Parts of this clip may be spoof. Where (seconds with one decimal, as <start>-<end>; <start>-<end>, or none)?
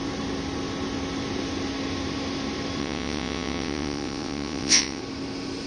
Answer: 2.8-5.0